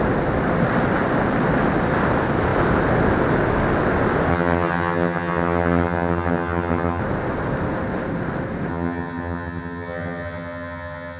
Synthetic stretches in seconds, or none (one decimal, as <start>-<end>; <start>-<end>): 4.3-7.0; 8.7-11.2